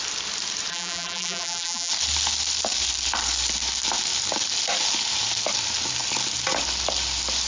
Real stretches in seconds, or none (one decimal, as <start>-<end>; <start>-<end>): 0.0-0.7; 1.9-7.5